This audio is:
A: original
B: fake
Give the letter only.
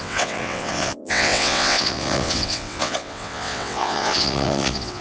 B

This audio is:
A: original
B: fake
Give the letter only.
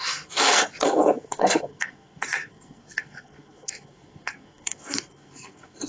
B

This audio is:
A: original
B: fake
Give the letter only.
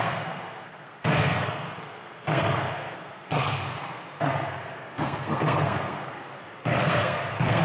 B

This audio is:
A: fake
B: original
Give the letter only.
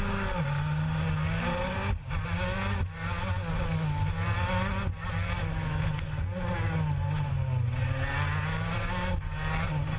B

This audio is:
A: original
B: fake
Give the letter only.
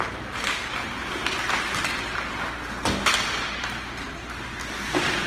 A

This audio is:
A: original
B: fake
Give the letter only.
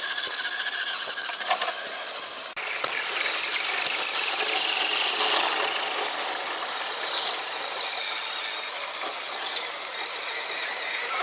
A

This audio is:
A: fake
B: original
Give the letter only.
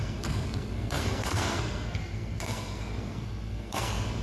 A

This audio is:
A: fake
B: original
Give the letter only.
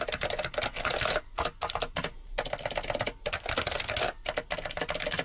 B